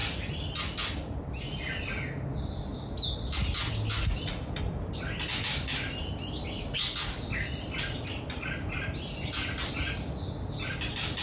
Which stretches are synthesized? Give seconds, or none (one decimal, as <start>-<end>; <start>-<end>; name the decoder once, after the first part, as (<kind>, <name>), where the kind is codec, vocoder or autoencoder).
none

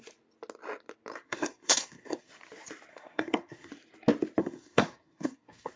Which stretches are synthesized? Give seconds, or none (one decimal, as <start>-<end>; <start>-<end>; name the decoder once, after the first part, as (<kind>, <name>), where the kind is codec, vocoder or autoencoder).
1.1-2.3 (codec, SNAC); 2.9-3.7; 4.4-5.8

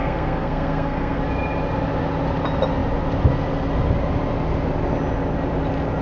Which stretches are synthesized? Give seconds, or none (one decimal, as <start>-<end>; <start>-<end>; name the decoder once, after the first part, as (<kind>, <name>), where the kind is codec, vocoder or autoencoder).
0.0-1.2 (codec, SNAC)

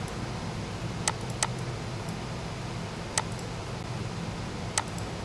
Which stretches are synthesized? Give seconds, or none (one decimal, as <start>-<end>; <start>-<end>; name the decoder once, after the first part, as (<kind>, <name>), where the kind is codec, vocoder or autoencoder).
none

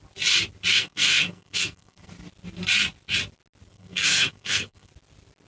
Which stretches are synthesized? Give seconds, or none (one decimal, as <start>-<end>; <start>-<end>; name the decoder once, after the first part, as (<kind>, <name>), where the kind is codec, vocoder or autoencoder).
0.7-2.1 (codec, SNAC); 3.7-4.9

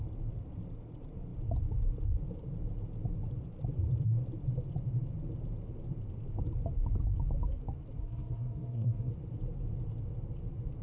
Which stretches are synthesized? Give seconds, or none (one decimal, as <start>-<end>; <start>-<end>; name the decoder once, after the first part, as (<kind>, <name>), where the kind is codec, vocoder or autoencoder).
8.0-9.1 (codec, SNAC)

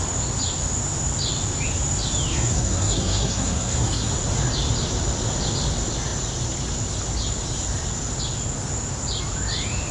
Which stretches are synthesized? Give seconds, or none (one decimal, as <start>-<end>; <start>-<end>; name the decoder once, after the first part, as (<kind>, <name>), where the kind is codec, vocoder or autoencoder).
2.3-4.1 (codec, SNAC)